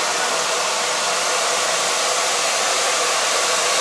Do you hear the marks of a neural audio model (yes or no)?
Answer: no